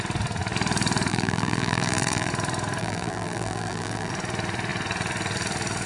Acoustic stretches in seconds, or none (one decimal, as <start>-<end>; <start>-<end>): 0.0-1.1; 2.3-2.8; 4.1-5.9